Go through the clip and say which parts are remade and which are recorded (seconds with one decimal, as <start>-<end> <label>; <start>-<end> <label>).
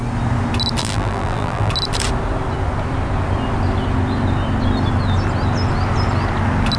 0.0-0.8 recorded; 0.8-1.7 remade; 1.7-6.8 recorded